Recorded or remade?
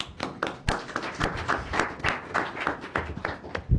recorded